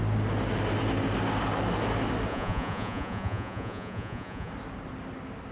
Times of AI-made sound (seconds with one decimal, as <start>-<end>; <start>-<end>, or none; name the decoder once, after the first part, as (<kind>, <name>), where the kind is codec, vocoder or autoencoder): 2.3-4.5 (vocoder, Vocos)